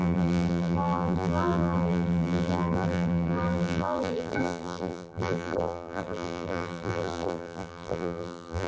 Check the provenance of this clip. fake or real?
fake